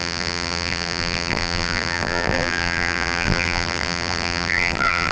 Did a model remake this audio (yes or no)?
yes